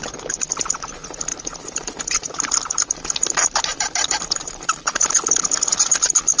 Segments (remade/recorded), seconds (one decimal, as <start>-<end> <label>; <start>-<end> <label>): 0.0-1.3 recorded; 1.3-5.1 remade; 5.1-6.4 recorded